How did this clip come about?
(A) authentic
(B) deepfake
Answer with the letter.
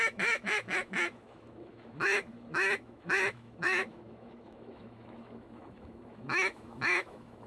B